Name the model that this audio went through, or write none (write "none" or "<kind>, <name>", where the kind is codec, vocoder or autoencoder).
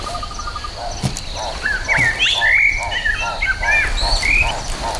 none